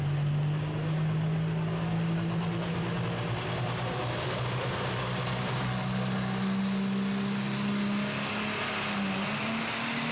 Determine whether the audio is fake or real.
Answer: real